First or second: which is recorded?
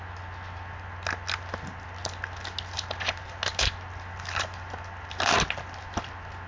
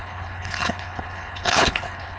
first